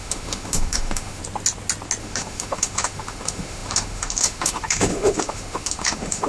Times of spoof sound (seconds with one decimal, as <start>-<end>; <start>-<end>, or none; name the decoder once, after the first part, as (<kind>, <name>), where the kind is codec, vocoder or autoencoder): 0.0-1.2 (autoencoder, DAC-VAE); 2.0-6.3